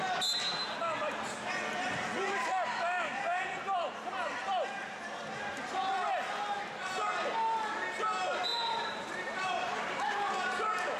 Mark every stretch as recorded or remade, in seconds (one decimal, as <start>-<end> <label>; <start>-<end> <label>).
0.0-3.1 recorded; 3.1-4.3 remade; 4.3-8.5 recorded; 8.5-10.3 remade; 10.3-11.0 recorded